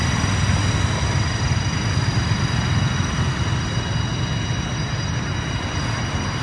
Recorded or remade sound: recorded